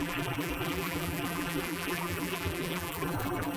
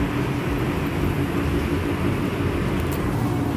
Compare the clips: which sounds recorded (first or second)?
second